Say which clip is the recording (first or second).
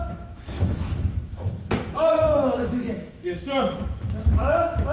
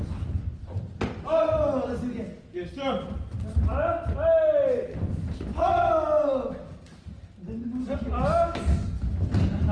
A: second